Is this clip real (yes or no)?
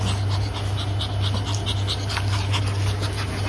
yes